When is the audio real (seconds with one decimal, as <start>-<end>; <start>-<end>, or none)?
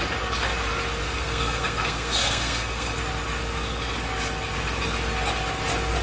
0.0-1.0; 3.0-6.0